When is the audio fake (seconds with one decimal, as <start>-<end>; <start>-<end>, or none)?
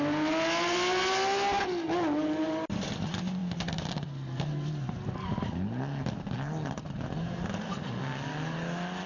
none